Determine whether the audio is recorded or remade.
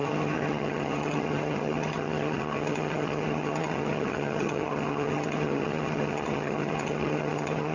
remade